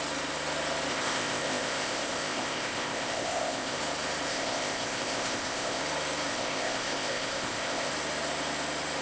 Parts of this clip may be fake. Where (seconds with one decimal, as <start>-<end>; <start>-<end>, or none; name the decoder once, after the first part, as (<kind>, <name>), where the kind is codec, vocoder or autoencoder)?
0.9-3.8 (codec, ZipCodec); 4.3-5.8; 6.3-7.9